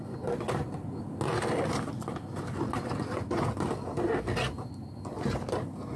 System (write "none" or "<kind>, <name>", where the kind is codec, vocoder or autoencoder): none